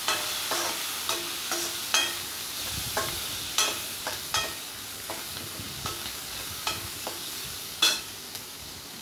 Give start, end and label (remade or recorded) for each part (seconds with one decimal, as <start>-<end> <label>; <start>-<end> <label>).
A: 0.0-1.9 recorded; 1.9-2.5 remade; 2.5-4.0 recorded; 4.0-9.0 remade